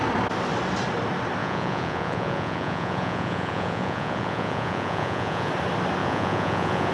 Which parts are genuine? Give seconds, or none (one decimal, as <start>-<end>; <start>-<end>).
0.0-1.4; 5.5-6.0